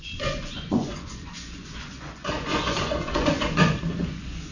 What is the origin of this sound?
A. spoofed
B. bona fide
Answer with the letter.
A